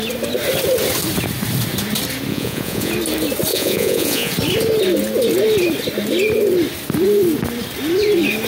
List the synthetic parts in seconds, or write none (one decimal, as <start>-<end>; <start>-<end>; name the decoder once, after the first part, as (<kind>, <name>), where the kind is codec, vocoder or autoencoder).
2.3-2.9 (vocoder, Vocos); 3.5-4.3